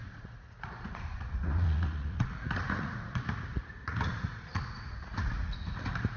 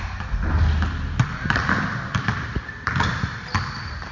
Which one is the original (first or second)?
second